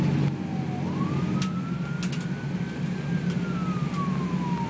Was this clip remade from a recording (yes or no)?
no